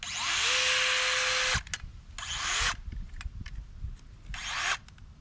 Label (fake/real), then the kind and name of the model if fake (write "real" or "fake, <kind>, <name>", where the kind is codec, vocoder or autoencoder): real